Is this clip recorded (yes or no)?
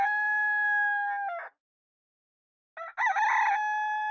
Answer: yes